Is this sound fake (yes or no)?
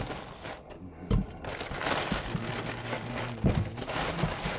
no